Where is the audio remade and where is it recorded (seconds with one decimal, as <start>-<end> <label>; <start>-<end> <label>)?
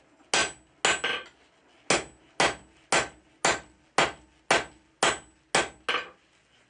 0.0-6.7 recorded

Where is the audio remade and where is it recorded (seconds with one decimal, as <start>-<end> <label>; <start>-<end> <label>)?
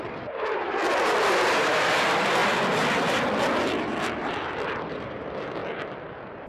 0.0-5.6 remade; 5.6-6.5 recorded